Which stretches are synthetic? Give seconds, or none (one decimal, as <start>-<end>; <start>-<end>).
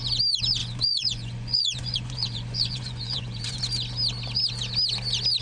0.6-3.6